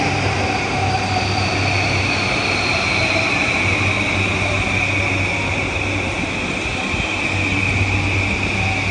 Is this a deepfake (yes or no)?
no